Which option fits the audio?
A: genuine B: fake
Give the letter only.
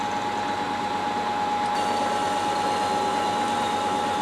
A